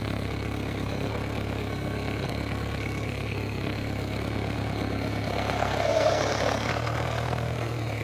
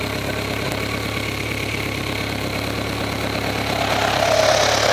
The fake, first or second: first